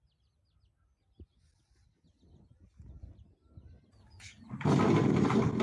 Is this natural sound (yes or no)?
yes